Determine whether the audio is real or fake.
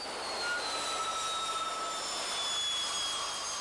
real